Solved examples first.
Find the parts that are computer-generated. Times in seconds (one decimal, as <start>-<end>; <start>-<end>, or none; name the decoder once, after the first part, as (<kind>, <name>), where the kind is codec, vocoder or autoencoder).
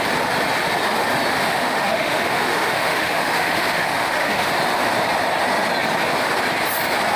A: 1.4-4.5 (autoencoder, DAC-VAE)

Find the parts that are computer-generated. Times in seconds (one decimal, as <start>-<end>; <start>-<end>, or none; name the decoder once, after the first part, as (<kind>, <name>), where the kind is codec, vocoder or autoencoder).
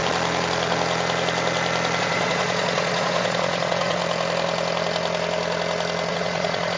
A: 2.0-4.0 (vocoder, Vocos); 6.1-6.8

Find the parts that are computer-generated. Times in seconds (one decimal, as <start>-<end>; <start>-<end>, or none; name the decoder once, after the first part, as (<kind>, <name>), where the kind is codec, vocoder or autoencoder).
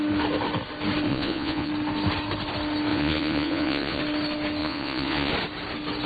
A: 1.1-1.7 (vocoder, Vocos); 2.9-4.0; 4.6-5.3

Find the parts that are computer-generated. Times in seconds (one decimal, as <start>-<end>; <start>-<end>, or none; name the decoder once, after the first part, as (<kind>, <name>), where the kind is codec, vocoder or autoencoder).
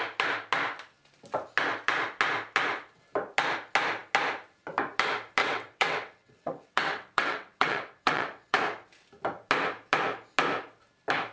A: 5.4-8.6 (vocoder, WaveNeXt)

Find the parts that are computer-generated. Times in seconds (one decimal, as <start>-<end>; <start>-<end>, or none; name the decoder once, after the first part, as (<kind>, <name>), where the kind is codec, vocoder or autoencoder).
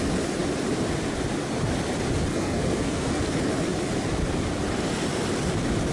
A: 2.3-3.2 (codec, SNAC)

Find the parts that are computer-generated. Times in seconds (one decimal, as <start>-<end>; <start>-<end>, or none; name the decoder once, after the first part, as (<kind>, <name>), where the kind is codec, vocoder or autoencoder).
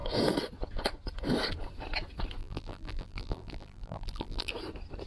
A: 2.4-4.5 (vocoder, BigVGAN v2)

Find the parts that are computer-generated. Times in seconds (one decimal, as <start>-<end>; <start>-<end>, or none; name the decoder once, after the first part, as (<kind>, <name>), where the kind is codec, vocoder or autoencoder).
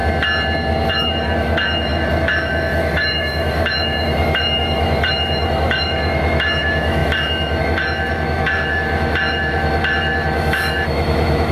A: 0.9-11.5 (autoencoder, DAC-VAE)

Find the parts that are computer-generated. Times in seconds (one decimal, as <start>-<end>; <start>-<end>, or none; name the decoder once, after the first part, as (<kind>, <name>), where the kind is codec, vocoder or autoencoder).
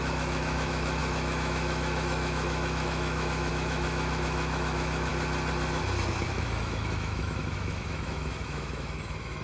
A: 0.0-5.1 (autoencoder, DAC-VAE); 6.3-9.4